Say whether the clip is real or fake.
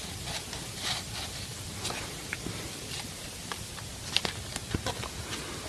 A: real